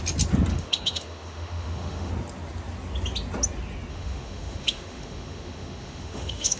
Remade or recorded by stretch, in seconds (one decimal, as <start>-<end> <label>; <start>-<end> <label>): 0.0-0.5 recorded; 0.5-2.1 remade; 2.1-3.9 recorded; 3.9-6.6 remade